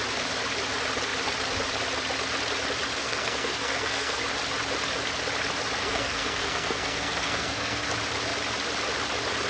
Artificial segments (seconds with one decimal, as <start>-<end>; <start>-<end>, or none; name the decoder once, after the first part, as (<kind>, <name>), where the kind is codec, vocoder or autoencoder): 3.0-4.2 (codec, SNAC); 5.8-7.9